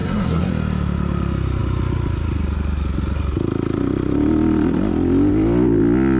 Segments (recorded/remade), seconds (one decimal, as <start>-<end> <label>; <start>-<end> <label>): 0.0-0.5 remade; 0.5-6.2 recorded